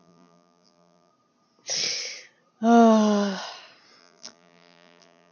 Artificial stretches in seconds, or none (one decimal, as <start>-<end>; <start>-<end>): 0.0-1.1; 4.0-5.3